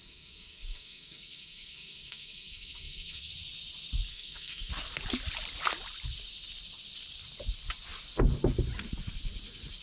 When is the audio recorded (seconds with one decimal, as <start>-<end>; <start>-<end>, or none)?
3.3-4.1; 4.7-9.8